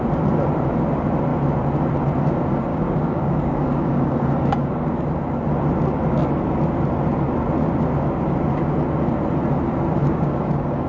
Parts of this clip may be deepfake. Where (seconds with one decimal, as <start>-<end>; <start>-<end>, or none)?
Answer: 2.7-5.0; 10.0-10.9